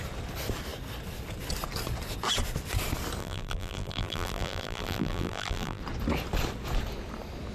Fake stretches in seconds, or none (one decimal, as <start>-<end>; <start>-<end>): 3.2-5.8